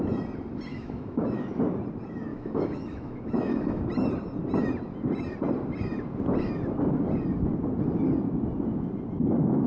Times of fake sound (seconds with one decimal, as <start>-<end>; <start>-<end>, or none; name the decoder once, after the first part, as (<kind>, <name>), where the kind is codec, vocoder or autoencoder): 0.7-1.6 (autoencoder, DAC-VAE); 2.3-3.8